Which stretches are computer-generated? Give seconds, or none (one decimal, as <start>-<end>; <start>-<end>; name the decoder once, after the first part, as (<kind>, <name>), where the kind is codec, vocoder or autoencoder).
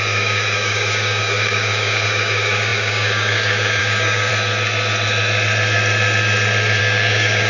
0.0-4.3 (codec, DAC); 6.8-7.5